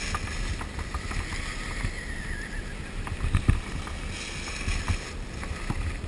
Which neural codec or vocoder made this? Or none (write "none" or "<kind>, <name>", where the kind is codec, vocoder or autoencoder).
none